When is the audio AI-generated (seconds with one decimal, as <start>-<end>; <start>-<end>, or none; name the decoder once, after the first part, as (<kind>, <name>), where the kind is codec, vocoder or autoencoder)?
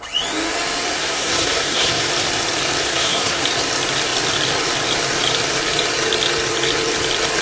1.0-2.1 (codec, SNAC); 2.8-3.4